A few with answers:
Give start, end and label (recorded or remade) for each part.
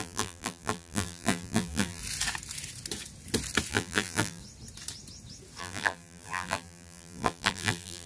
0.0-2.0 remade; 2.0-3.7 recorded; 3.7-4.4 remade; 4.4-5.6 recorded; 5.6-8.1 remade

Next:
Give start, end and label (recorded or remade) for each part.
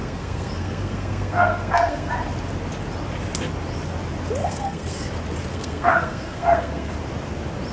0.0-2.1 remade; 2.1-4.4 recorded; 4.4-5.1 remade; 5.1-5.5 recorded; 5.5-6.9 remade; 6.9-7.7 recorded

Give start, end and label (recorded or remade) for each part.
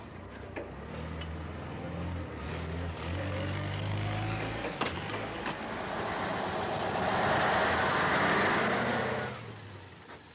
0.0-2.5 recorded; 2.5-5.4 remade; 5.4-10.3 recorded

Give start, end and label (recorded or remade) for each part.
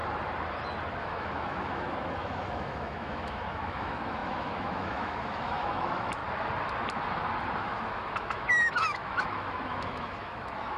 0.0-1.0 recorded; 1.0-6.2 remade; 6.2-7.6 recorded; 7.6-10.8 remade